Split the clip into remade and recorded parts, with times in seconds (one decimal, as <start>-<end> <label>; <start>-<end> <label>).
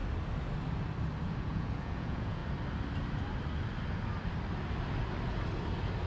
0.0-1.4 recorded; 1.4-2.4 remade; 2.4-6.1 recorded